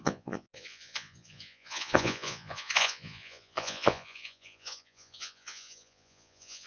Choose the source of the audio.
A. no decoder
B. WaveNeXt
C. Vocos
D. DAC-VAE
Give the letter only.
C